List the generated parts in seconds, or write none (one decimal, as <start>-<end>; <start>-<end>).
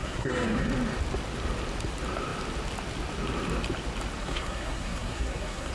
0.0-0.6; 4.2-5.7